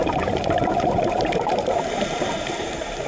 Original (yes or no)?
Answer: no